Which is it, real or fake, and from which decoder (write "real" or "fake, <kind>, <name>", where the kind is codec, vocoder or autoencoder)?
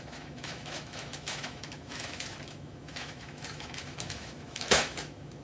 fake, autoencoder, DAC-VAE